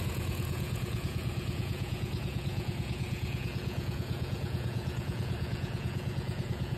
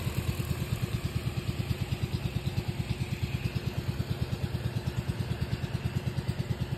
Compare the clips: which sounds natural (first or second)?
second